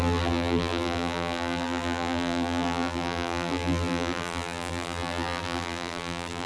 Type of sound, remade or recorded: remade